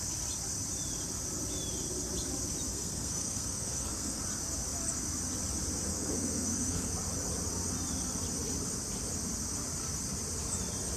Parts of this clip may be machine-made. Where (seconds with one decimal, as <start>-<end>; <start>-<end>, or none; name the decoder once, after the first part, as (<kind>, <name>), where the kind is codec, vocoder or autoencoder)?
2.7-4.2 (codec, SNAC); 5.9-6.9